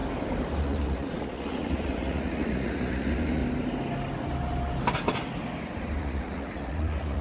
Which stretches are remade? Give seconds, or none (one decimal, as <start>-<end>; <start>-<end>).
0.6-3.4; 6.0-7.2